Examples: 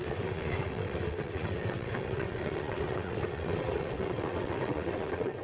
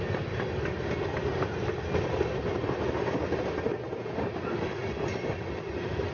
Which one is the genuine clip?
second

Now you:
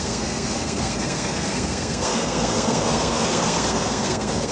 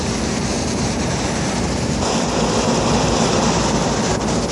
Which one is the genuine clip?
second